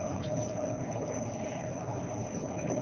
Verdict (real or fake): fake